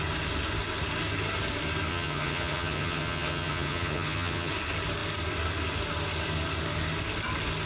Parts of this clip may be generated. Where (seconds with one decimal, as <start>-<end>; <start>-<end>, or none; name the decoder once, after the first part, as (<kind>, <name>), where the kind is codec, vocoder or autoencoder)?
1.9-4.5 (vocoder, HiFi-GAN)

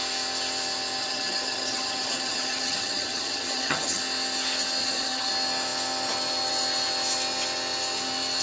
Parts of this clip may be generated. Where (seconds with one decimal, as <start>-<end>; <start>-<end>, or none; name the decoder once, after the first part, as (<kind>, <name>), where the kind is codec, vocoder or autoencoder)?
1.0-4.0 (vocoder, HiFi-GAN); 4.8-5.3

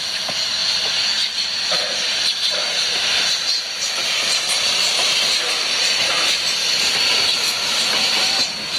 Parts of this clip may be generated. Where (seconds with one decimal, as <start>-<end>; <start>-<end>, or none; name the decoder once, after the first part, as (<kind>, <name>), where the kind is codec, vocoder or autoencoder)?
1.2-6.2 (vocoder, BigVGAN v2); 7.3-8.2

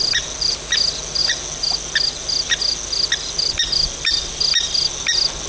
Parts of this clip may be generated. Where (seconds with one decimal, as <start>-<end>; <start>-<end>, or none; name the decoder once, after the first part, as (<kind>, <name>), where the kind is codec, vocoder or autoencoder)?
none

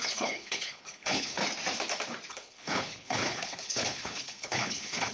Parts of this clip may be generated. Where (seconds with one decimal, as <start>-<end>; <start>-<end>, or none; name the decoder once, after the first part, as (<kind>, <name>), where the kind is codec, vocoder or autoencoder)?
0.0-1.4 (codec, HILCodec); 2.3-5.1

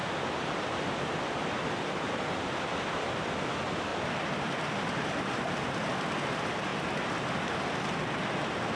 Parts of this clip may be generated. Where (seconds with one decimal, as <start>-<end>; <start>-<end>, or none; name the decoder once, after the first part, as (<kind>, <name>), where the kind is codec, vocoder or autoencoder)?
none